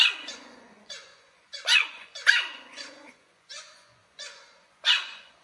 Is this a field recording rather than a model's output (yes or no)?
no